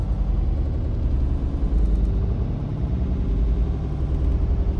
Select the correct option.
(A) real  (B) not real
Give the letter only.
A